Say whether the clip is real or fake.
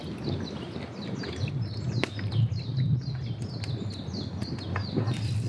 real